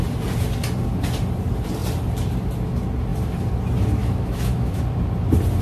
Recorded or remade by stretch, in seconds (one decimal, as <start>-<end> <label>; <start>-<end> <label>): 0.0-4.0 recorded; 4.0-4.8 remade; 4.8-5.6 recorded